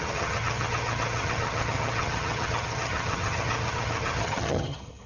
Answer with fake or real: fake